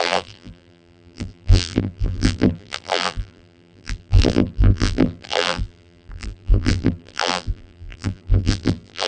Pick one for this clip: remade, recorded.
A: remade